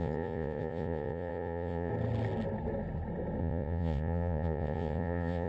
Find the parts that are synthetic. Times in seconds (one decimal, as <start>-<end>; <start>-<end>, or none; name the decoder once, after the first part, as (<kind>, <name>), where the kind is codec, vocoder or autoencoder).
0.0-1.9 (vocoder, Vocos); 3.4-5.5